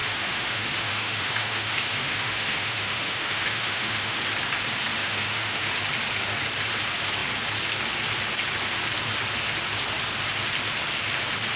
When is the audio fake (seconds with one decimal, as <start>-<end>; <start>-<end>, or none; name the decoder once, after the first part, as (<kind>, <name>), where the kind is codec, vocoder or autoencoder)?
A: 0.0-4.2 (autoencoder, DAC-VAE); 5.0-5.7